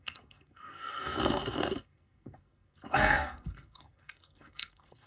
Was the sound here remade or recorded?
remade